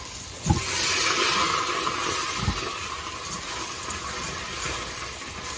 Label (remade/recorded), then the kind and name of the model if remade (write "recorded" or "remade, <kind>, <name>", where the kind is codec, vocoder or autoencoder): recorded